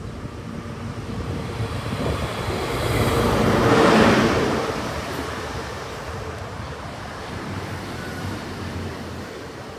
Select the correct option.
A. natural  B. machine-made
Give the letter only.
B